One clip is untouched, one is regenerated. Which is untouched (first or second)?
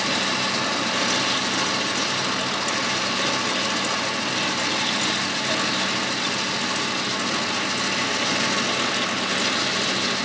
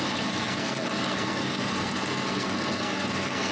first